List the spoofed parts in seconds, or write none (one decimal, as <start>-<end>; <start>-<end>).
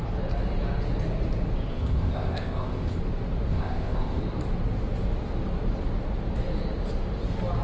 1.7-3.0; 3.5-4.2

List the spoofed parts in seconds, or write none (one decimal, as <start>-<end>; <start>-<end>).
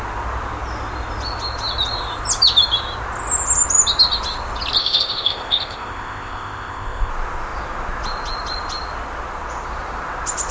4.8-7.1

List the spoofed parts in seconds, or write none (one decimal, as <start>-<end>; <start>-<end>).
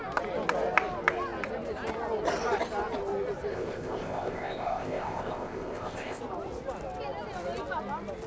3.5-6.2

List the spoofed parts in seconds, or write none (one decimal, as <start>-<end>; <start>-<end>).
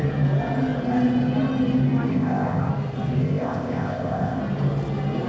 2.1-2.7; 3.2-4.4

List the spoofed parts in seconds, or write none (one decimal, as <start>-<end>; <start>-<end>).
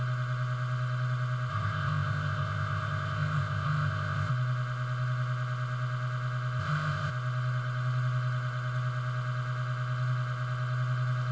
1.5-4.3; 6.6-7.1